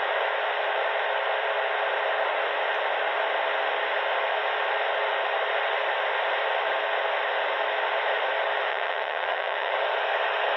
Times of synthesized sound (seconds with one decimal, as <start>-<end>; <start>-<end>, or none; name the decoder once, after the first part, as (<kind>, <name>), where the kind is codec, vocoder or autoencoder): 8.7-9.7 (vocoder, WaveNeXt)